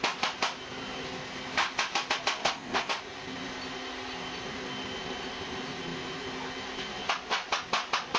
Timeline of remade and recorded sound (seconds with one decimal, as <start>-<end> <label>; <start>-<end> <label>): 0.0-2.4 recorded; 2.4-2.9 remade; 2.9-8.2 recorded